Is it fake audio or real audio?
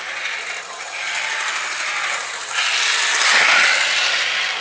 real